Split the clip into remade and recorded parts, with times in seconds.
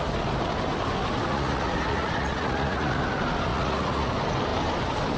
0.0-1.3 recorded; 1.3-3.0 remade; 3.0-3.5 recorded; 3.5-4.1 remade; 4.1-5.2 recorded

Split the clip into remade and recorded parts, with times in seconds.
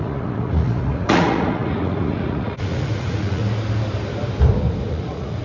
0.0-3.4 remade; 3.4-4.9 recorded; 4.9-5.4 remade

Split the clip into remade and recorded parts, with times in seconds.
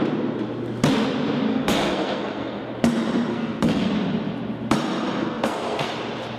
0.0-1.5 recorded; 1.5-2.6 remade; 2.6-3.3 recorded; 3.3-3.9 remade; 3.9-5.2 recorded; 5.2-5.9 remade; 5.9-6.4 recorded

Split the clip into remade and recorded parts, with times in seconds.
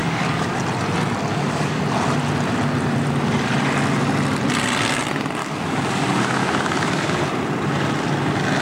0.0-0.6 remade; 0.6-1.3 recorded; 1.3-1.8 remade; 1.8-5.4 recorded; 5.4-7.2 remade; 7.2-8.6 recorded